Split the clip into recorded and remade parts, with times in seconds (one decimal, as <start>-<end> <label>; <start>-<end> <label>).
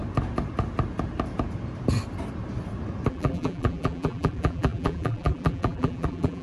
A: 0.0-3.1 recorded; 3.1-6.4 remade